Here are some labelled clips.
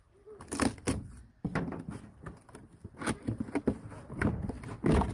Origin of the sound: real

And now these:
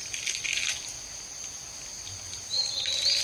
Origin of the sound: real